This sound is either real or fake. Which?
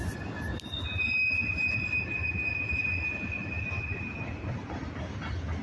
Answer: real